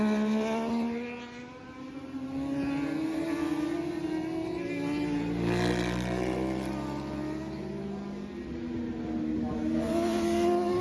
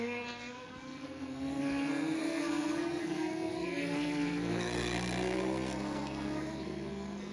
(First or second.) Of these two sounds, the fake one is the second